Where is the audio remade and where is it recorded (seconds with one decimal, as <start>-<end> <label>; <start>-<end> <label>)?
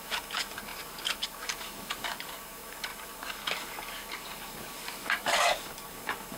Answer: 0.0-6.4 remade